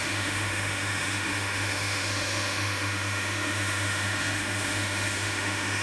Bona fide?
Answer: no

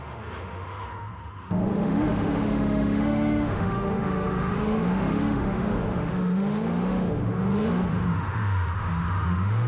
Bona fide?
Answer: no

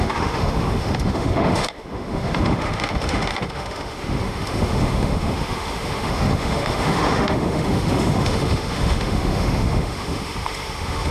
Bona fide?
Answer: no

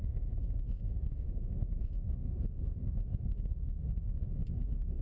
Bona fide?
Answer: no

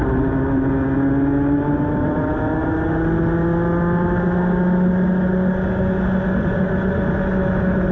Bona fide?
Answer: yes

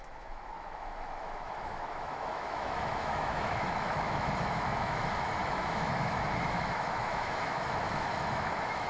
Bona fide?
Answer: no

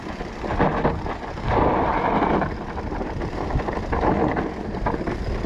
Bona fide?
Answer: yes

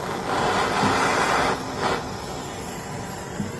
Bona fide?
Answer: yes